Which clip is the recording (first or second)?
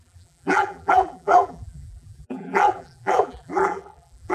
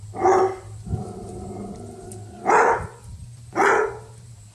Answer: second